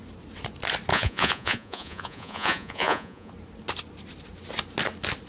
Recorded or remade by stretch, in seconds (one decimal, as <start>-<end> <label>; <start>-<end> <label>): 0.0-0.9 recorded; 0.9-3.3 remade; 3.3-5.3 recorded